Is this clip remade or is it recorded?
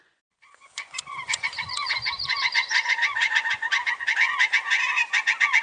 remade